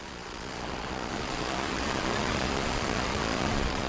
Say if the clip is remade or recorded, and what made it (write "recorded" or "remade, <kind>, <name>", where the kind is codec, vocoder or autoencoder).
remade, vocoder, Vocos